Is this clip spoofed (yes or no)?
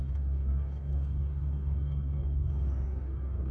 yes